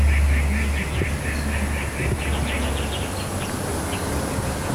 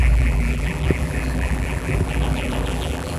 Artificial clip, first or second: second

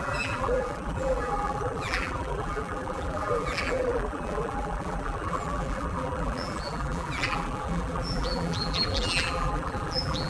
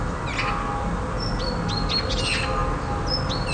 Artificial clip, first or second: first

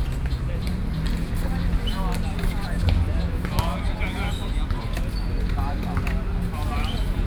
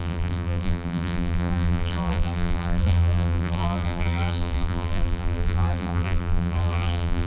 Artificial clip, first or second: second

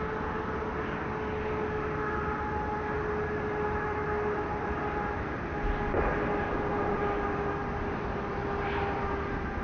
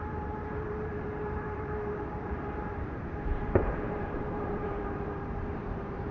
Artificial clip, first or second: second